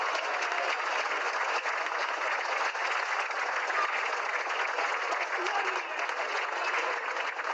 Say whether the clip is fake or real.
fake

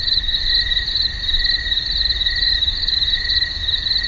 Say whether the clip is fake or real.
real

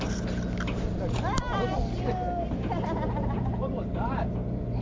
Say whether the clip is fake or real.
real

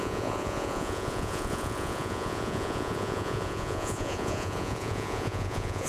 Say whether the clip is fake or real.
fake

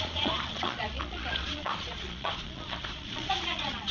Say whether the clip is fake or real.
fake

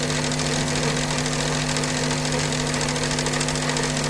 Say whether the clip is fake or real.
real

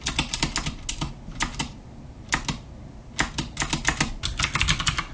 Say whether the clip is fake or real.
real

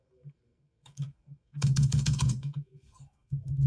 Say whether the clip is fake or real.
fake